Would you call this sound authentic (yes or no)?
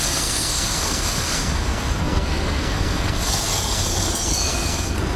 no